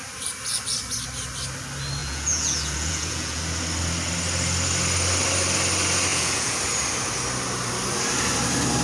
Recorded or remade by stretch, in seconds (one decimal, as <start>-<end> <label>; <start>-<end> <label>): 0.0-2.0 recorded; 2.0-3.4 remade; 3.4-6.1 recorded; 6.1-6.6 remade; 6.6-8.8 recorded